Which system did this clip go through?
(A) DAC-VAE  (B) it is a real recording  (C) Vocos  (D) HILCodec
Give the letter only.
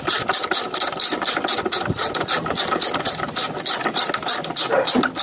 B